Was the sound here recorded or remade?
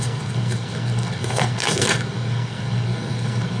remade